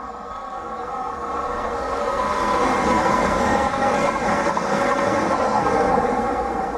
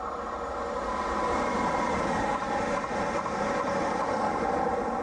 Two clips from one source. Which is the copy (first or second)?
first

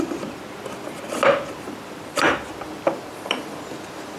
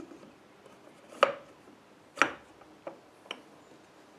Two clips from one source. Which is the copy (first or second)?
first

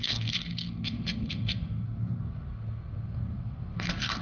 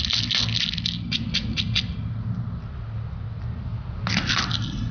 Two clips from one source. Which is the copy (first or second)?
first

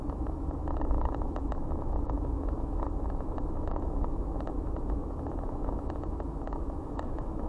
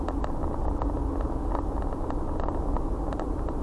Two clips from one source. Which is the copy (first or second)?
first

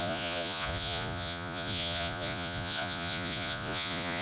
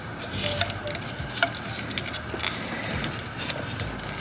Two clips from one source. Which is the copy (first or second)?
first